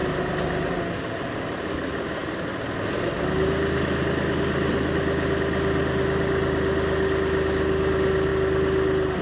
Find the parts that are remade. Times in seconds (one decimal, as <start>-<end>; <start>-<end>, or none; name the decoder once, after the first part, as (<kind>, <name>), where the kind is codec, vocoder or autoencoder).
none